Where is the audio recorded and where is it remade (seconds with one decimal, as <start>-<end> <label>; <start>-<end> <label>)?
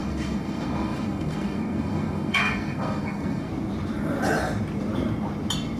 0.0-3.5 remade; 3.5-5.8 recorded